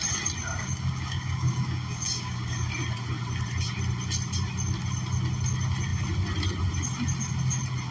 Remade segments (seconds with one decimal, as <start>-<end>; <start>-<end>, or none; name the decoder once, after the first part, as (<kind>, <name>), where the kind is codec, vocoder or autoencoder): 0.6-2.7 (codec, DAC)